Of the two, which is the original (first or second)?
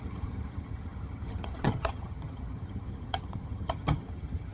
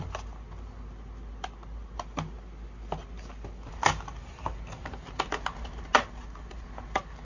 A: second